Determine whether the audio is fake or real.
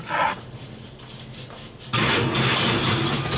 real